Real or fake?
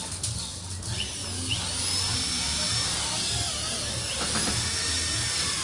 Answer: real